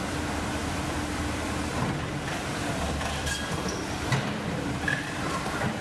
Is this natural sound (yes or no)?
no